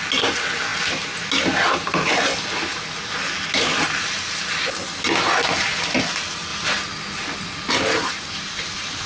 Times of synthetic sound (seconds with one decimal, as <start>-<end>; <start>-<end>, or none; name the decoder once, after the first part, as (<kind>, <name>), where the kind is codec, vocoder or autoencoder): none